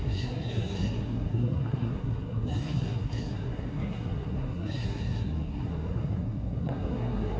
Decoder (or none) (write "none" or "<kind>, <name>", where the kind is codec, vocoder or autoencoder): codec, SNAC